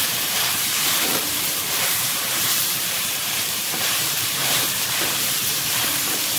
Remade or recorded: remade